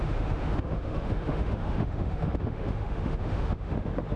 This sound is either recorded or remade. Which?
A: remade